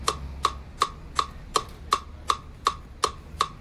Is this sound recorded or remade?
recorded